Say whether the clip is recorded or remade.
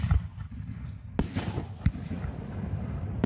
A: recorded